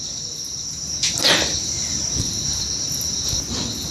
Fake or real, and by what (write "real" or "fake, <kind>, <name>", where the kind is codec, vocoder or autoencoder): real